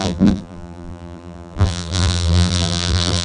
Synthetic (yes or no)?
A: yes